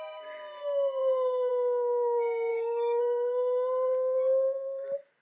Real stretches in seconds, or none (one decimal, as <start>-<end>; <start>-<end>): 0.0-2.5; 3.0-5.2